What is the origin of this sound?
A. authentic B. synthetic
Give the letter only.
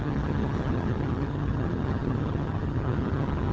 B